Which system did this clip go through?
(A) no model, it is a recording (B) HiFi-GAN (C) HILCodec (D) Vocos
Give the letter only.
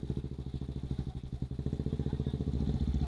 A